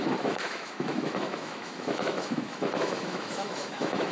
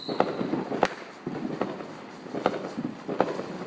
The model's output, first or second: first